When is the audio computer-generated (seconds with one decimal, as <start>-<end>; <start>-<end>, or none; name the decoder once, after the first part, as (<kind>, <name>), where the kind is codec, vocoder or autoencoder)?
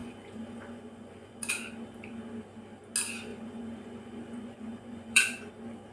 0.0-1.5 (vocoder, Vocos); 3.3-5.5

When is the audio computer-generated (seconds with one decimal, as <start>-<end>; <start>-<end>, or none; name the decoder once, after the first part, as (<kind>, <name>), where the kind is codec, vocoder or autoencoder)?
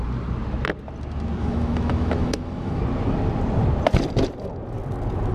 1.4-2.8 (autoencoder, DAC-VAE)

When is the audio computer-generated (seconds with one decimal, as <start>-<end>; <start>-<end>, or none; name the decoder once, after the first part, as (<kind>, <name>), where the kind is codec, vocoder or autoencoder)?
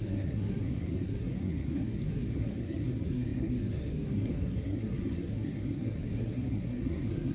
0.0-7.3 (codec, SNAC)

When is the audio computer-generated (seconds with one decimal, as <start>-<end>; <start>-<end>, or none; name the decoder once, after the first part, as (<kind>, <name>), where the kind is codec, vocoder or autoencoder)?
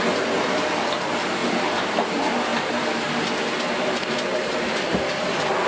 1.4-2.1 (vocoder, BigVGAN v2); 4.3-5.2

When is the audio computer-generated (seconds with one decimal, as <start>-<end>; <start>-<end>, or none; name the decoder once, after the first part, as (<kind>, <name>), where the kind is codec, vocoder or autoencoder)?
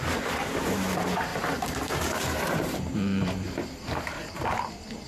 1.3-4.4 (vocoder, BigVGAN v2)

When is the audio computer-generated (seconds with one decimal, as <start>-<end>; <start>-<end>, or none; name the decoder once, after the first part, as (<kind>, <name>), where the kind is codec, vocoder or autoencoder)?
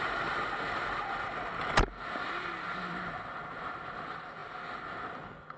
none